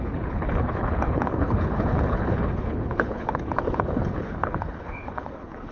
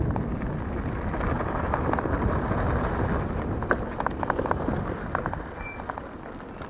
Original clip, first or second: second